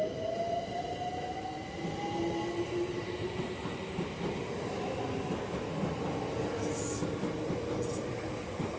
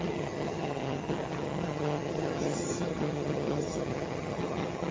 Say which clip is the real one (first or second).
first